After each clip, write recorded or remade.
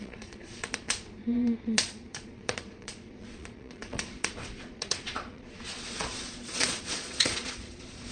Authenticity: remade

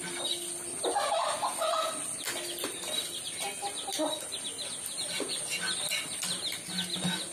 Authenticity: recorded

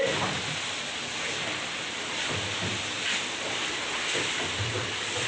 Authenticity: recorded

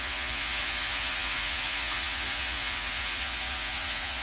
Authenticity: remade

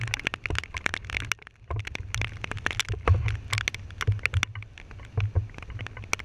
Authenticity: recorded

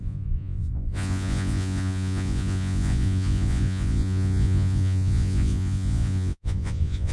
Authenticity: remade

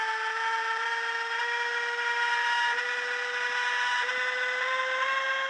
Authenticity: recorded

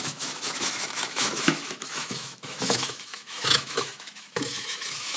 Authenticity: remade